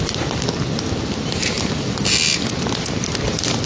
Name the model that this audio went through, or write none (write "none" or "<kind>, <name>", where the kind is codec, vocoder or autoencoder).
none